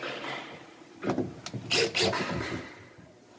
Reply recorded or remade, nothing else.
recorded